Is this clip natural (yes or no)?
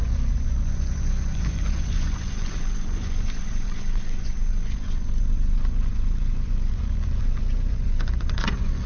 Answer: no